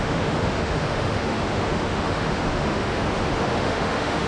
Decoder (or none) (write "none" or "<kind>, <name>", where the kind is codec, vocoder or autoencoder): autoencoder, DAC-VAE